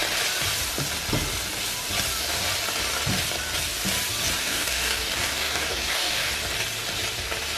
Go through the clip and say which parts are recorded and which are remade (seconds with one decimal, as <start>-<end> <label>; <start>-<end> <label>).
0.0-4.4 recorded; 4.4-6.3 remade; 6.3-7.6 recorded